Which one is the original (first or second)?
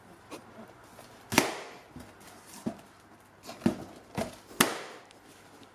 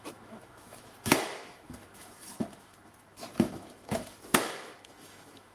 first